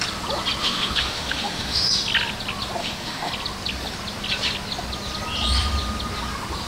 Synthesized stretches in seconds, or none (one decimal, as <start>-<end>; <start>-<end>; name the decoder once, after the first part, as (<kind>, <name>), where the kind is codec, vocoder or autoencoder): 0.6-1.9 (autoencoder, DAC-VAE); 2.8-3.3